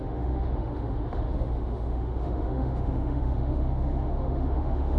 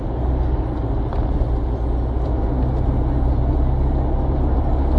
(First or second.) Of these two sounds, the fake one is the first